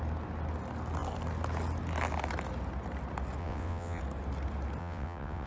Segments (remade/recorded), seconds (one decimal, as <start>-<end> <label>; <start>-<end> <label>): 0.0-3.4 recorded; 3.4-4.0 remade; 4.0-4.8 recorded; 4.8-5.5 remade